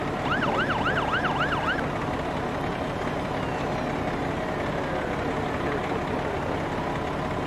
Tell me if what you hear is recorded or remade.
recorded